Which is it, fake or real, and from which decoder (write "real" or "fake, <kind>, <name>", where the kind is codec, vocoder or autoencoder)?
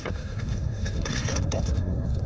fake, codec, SNAC